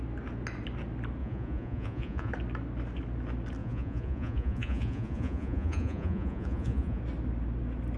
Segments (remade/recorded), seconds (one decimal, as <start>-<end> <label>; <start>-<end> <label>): 0.0-1.2 recorded; 1.2-2.3 remade; 2.3-3.6 recorded; 3.6-7.0 remade; 7.0-8.0 recorded